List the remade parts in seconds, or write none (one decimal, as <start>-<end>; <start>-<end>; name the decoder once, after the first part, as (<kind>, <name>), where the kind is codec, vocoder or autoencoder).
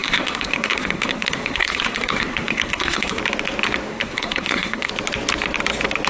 0.0-3.2 (codec, SNAC); 3.9-4.9